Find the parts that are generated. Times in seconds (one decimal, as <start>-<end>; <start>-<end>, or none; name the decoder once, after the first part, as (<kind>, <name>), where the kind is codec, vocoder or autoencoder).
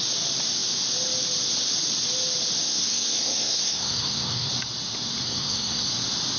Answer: 2.6-4.5 (codec, SNAC); 5.2-5.9